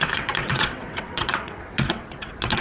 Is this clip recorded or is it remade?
remade